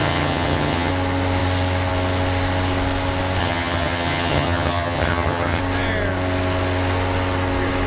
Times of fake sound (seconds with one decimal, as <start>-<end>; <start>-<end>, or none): 0.0-0.9; 3.4-5.6

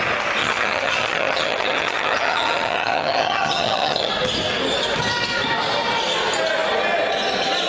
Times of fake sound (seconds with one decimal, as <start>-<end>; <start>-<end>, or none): 0.4-4.1